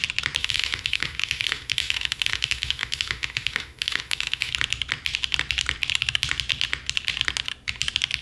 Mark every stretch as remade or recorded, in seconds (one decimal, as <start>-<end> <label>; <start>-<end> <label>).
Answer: 0.0-0.4 recorded; 0.4-4.5 remade; 4.5-8.2 recorded

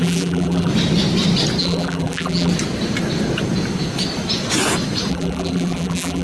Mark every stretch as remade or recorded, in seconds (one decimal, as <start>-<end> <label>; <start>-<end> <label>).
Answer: 0.0-0.7 remade; 0.7-1.6 recorded; 1.6-2.5 remade; 2.5-5.1 recorded; 5.1-6.2 remade

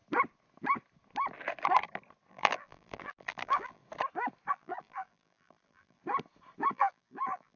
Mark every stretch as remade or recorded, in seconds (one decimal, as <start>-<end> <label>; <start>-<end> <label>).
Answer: 0.0-2.3 recorded; 2.3-3.8 remade; 3.8-4.5 recorded; 4.5-6.0 remade; 6.0-6.7 recorded; 6.7-7.6 remade

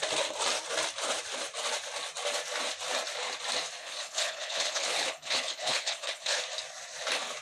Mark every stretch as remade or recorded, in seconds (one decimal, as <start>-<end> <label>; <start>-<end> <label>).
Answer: 0.0-3.8 recorded; 3.8-6.4 remade; 6.4-7.4 recorded

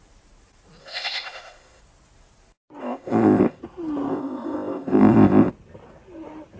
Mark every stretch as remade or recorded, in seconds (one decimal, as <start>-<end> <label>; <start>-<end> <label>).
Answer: 0.0-0.8 recorded; 0.8-1.8 remade; 1.8-2.8 recorded; 2.8-3.6 remade; 3.6-4.1 recorded; 4.1-5.5 remade; 5.5-6.6 recorded

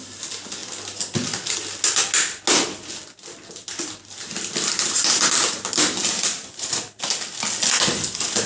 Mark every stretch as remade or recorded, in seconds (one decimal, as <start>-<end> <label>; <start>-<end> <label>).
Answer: 0.0-6.0 recorded; 6.0-7.0 remade; 7.0-8.5 recorded